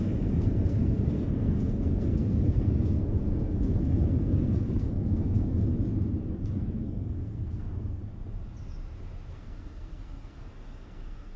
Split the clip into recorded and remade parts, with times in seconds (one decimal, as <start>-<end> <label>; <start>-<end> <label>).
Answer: 0.0-5.6 remade; 5.6-6.3 recorded; 6.3-8.0 remade; 8.0-9.3 recorded; 9.3-11.4 remade